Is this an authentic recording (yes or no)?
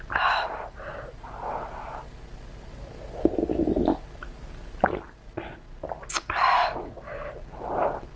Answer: yes